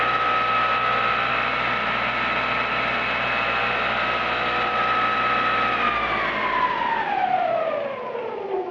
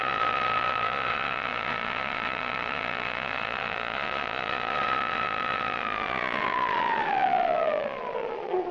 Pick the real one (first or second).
first